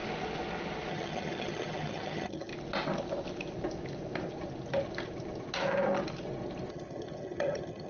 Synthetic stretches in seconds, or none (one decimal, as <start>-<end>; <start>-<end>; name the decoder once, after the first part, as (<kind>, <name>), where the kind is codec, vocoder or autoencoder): 0.9-2.5 (vocoder, HiFi-GAN); 6.7-7.9